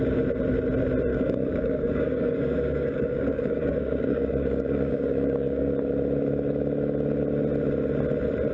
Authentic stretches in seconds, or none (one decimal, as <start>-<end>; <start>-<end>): 0.0-1.1; 5.7-8.5